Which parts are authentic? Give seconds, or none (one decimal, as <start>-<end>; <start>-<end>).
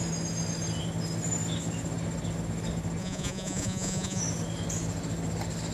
0.0-3.0; 4.2-5.7